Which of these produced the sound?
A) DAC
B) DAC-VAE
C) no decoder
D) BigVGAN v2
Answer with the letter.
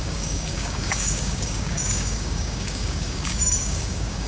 A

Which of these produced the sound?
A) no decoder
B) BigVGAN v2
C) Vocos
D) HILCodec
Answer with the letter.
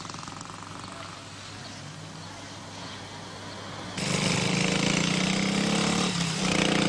A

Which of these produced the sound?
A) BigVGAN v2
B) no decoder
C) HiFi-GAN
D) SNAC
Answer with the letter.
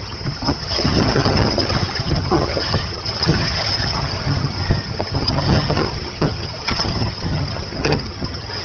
C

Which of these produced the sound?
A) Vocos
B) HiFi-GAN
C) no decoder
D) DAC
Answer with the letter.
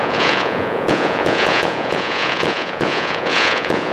A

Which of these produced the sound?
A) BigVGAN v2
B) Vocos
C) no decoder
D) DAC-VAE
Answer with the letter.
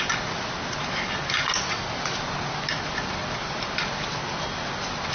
C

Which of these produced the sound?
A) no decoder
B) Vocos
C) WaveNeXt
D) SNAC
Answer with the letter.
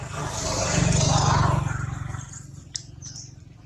A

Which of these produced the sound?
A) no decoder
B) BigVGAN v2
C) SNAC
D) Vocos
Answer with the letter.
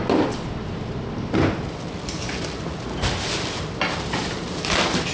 A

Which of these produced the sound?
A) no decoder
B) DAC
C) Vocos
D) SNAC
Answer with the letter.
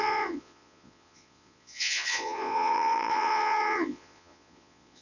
C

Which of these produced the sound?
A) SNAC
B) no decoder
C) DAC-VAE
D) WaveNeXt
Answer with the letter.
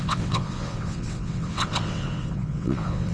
D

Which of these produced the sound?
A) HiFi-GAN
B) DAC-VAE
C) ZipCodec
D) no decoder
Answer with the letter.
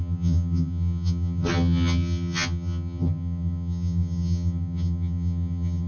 A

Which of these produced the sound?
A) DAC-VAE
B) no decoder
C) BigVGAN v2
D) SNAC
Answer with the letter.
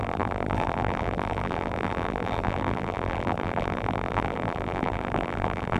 C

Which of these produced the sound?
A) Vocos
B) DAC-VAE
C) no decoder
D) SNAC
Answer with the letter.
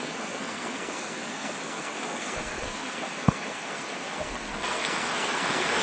D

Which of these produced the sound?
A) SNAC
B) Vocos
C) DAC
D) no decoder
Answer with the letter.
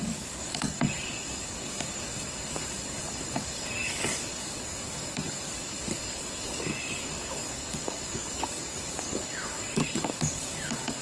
C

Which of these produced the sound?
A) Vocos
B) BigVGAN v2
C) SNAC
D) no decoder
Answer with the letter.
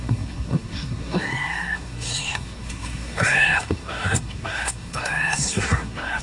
C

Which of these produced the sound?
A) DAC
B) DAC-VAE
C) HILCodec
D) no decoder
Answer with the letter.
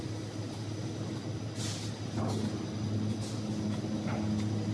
D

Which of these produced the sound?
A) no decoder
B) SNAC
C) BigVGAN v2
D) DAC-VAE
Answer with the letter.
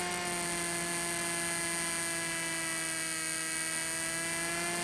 A